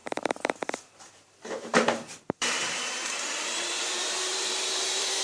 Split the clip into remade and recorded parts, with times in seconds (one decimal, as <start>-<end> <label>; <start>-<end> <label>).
0.0-5.2 remade